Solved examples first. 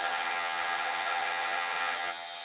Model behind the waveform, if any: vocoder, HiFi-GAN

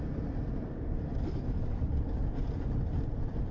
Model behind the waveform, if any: vocoder, BigVGAN v2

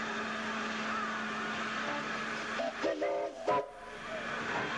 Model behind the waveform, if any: none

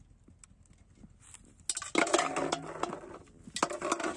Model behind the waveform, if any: none